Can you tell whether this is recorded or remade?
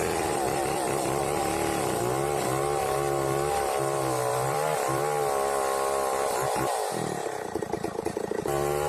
remade